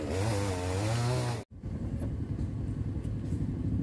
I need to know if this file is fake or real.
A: real